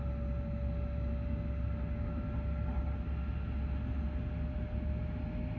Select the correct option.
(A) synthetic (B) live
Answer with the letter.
B